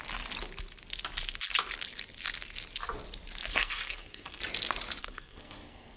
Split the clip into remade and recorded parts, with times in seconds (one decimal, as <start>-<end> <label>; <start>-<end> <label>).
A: 0.0-3.5 recorded; 3.5-4.4 remade; 4.4-5.0 recorded; 5.0-6.0 remade